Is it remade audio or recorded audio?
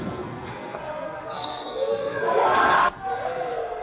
remade